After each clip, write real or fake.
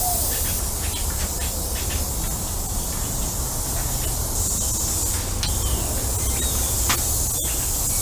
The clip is real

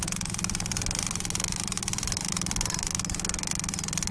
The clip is fake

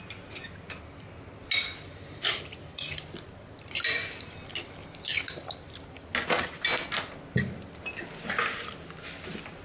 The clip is real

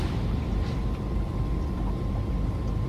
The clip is fake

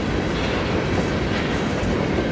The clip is real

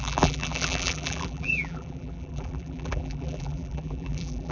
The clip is fake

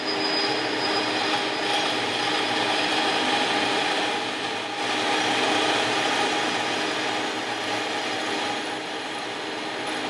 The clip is real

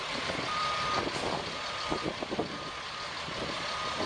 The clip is fake